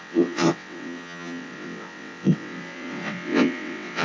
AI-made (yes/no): yes